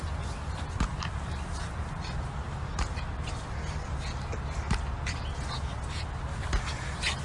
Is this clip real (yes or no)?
yes